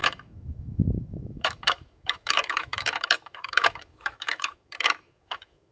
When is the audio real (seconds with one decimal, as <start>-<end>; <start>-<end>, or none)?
none